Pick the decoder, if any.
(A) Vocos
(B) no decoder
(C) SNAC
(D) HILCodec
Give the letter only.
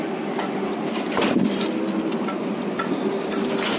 B